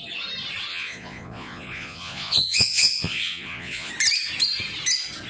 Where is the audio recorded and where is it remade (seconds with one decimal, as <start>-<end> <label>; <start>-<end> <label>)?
0.0-0.7 recorded; 0.7-3.9 remade; 3.9-5.3 recorded